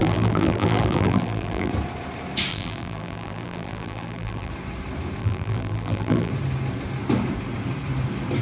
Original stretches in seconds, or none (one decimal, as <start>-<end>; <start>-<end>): 1.7-2.5; 4.5-5.2; 6.3-8.4